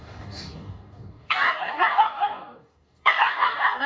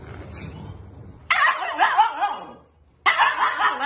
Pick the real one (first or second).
second